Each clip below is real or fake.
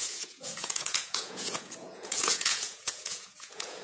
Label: fake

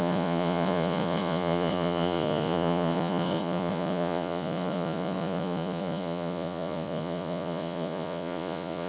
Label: fake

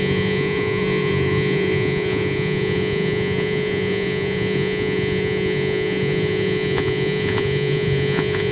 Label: fake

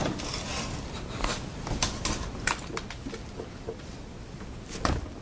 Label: real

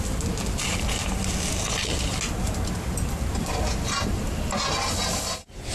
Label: real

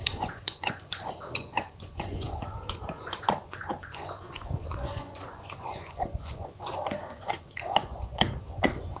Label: fake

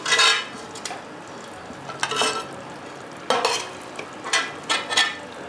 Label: real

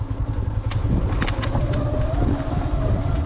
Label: real